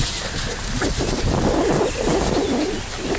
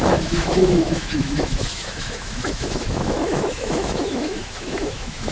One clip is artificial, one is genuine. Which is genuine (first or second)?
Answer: first